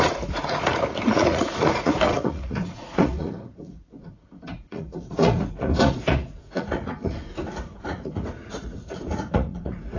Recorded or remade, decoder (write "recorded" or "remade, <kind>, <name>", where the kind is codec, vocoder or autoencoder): remade, vocoder, Vocos